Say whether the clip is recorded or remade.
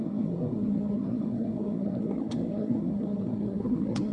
remade